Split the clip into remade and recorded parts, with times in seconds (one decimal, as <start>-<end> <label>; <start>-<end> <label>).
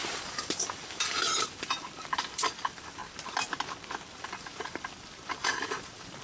0.0-3.0 remade; 3.0-4.2 recorded; 4.2-6.2 remade